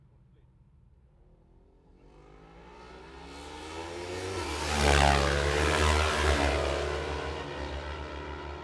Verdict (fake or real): real